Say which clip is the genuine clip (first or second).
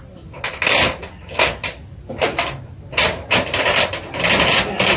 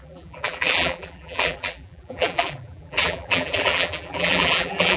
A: first